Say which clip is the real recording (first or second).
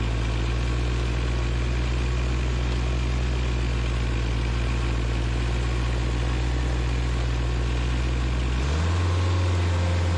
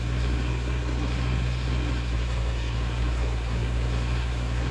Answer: first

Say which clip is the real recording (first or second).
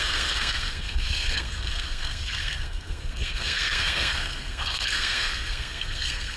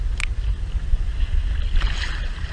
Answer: second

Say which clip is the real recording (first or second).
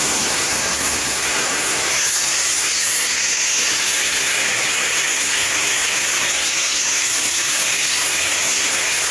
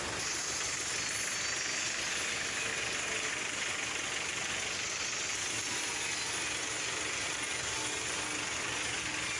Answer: second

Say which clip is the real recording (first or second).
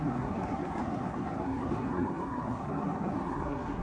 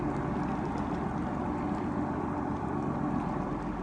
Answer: second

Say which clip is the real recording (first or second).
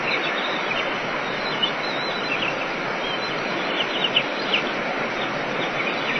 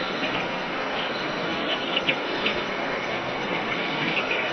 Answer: first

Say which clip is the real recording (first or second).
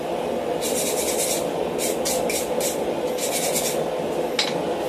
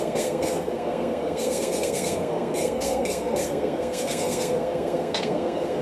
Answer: first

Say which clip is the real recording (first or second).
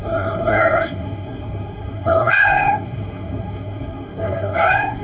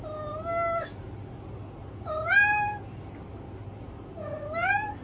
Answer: second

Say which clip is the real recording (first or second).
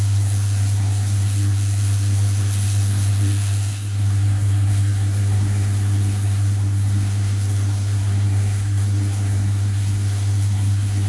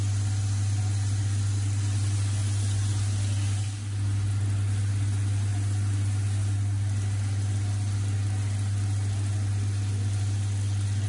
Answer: second